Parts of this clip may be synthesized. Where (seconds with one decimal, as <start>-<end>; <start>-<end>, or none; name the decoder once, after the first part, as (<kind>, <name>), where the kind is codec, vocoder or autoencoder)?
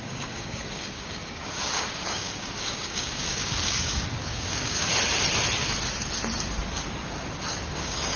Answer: 0.0-4.9 (codec, DAC); 7.5-8.2